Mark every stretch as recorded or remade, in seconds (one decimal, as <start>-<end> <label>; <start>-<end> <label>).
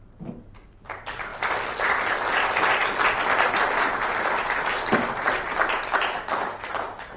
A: 0.0-7.2 recorded